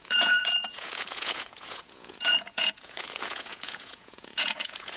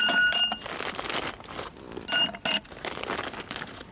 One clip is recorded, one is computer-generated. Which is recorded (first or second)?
second